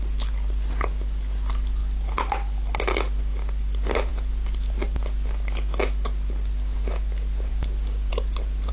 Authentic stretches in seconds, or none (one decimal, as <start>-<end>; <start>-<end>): 0.0-8.7